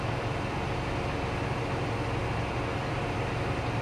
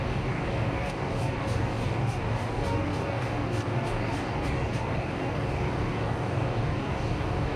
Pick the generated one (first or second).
second